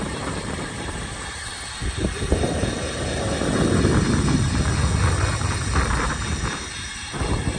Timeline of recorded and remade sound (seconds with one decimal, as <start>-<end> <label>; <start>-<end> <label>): 0.0-1.8 remade; 1.8-6.4 recorded; 6.4-7.6 remade